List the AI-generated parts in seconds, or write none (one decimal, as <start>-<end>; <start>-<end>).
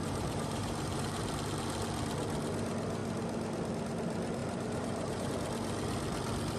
0.0-1.3; 4.4-5.3